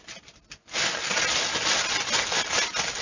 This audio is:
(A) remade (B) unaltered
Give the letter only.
B